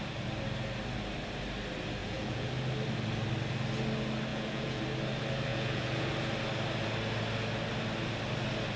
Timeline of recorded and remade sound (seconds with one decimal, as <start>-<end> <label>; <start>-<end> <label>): 0.0-2.0 recorded; 2.0-2.5 remade; 2.5-4.3 recorded; 4.3-4.8 remade; 4.8-5.5 recorded; 5.5-6.1 remade; 6.1-8.8 recorded